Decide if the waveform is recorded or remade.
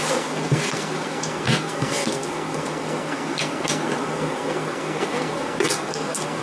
remade